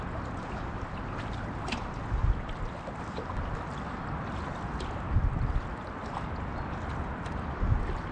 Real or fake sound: real